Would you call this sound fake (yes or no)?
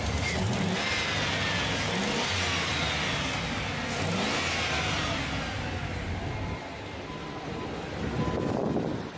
no